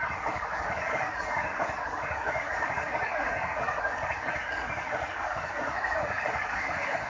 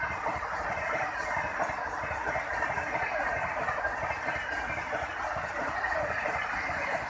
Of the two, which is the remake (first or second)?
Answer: first